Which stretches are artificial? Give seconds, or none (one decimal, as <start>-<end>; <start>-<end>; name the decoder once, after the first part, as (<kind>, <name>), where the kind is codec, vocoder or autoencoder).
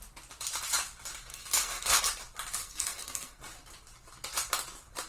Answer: 1.3-2.0 (codec, SNAC); 2.6-3.4